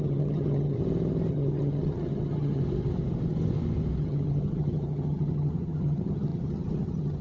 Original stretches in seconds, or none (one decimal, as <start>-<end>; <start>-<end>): 0.8-1.3; 2.6-4.0